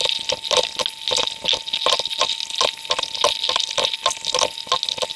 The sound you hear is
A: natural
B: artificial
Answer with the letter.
A